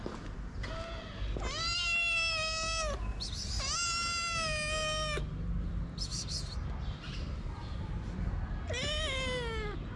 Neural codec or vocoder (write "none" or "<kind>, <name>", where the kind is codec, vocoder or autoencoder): none